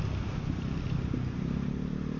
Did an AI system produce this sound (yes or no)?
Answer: no